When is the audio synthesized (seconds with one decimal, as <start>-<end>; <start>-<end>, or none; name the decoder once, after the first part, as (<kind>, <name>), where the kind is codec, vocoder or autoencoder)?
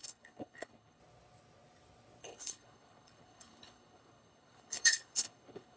0.0-1.0 (codec, HILCodec); 2.2-5.8